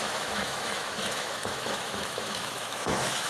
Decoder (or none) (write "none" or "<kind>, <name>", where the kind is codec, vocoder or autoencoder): autoencoder, DAC-VAE